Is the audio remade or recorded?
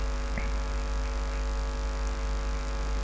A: recorded